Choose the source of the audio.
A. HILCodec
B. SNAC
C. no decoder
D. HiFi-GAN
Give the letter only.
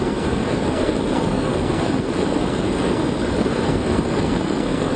B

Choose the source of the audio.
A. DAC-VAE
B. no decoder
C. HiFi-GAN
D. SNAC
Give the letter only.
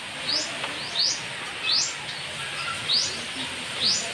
B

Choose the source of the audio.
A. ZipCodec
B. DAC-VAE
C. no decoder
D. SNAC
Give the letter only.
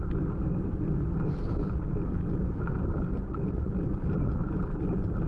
C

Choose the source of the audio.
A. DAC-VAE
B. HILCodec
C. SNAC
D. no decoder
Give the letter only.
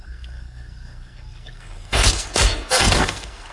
C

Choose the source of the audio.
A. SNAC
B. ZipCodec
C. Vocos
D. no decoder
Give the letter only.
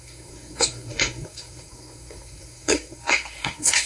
A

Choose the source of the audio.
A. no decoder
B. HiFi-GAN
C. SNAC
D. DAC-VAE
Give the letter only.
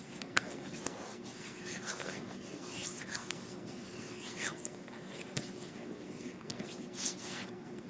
C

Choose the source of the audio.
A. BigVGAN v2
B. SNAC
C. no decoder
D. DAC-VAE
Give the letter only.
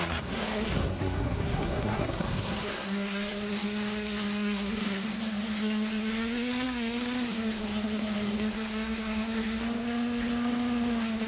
B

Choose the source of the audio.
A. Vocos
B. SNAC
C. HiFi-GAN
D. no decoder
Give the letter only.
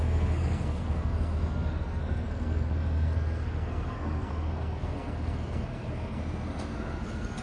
B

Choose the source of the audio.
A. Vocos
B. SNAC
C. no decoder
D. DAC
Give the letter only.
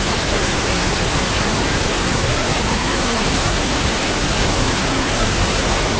B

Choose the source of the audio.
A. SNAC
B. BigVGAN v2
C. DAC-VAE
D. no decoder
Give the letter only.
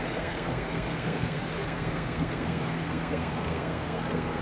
A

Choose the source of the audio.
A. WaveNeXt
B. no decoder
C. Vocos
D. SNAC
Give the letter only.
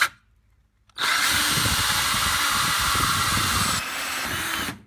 B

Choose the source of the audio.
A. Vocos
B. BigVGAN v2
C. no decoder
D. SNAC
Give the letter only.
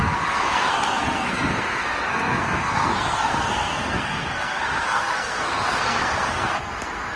D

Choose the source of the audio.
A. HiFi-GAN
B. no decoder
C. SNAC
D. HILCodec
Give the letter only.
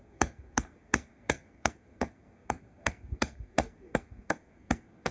C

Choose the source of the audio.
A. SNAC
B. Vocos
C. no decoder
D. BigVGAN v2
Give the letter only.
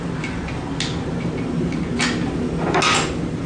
C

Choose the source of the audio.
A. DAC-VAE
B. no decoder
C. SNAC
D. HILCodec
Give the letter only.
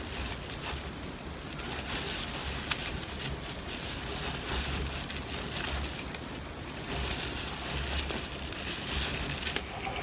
B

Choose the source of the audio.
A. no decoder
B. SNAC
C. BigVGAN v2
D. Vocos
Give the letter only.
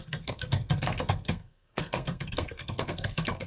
B